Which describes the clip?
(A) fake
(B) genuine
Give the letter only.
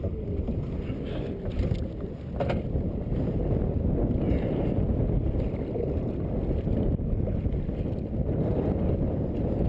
B